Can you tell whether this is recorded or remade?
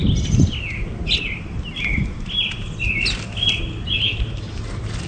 recorded